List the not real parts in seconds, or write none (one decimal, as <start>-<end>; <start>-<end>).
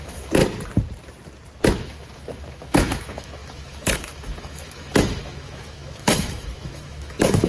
0.0-0.4; 1.8-7.5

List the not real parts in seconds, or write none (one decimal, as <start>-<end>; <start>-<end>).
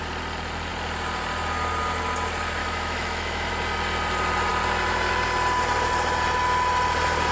2.6-3.5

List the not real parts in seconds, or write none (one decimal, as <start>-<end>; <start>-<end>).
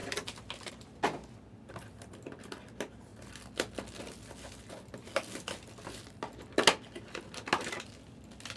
none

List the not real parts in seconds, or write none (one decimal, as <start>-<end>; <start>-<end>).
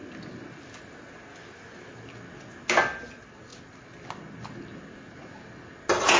1.3-1.9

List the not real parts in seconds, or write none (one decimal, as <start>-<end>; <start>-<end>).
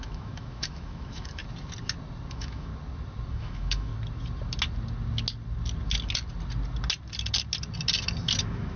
0.0-1.4; 2.3-2.7; 3.3-3.9; 8.4-8.8